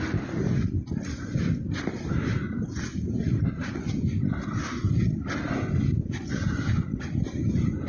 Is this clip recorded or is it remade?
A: recorded